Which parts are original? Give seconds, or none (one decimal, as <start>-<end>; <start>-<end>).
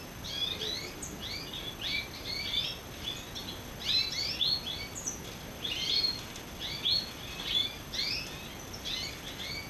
0.0-9.7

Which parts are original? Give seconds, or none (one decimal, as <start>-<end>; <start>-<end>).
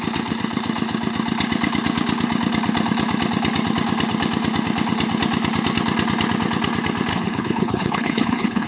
0.0-7.1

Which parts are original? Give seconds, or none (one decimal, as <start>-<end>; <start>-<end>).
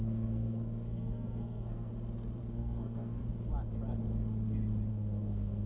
1.9-2.4; 3.2-4.9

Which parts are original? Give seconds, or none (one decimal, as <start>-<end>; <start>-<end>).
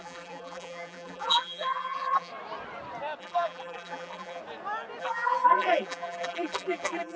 2.3-3.2; 4.4-5.0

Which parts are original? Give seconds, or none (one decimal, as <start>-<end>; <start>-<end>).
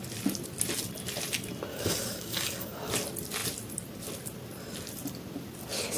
0.0-1.7; 2.9-6.0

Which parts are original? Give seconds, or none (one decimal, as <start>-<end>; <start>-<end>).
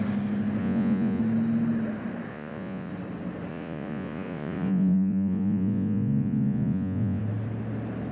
0.0-0.6; 1.2-2.3; 2.9-3.5; 7.2-8.1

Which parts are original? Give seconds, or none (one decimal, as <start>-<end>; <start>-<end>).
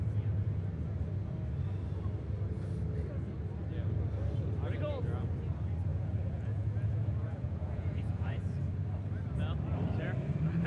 0.0-5.9; 8.4-10.7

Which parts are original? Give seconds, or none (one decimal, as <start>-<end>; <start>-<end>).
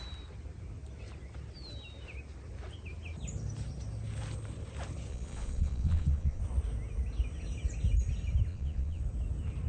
0.0-5.1; 6.4-8.5; 9.0-9.7